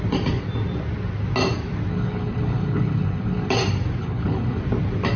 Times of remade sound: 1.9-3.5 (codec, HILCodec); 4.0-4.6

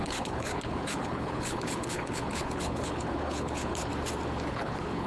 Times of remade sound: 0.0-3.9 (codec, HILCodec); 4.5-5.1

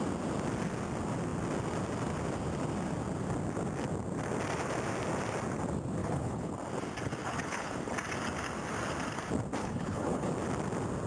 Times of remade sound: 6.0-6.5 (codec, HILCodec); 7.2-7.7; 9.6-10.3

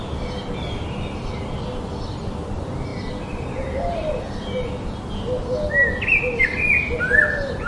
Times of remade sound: none

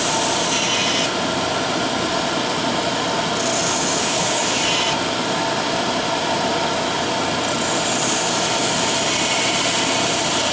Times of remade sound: 4.0-4.6 (codec, HILCodec)